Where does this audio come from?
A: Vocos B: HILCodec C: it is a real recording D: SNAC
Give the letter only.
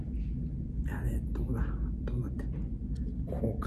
C